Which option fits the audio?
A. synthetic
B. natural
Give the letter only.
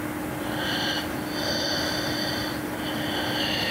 B